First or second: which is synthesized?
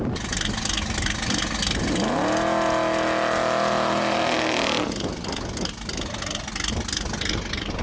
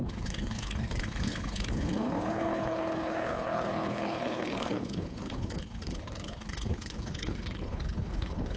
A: second